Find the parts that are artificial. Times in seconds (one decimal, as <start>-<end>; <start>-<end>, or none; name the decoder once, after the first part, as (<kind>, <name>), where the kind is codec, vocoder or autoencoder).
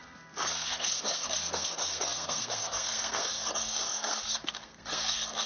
0.0-5.5 (codec, SNAC)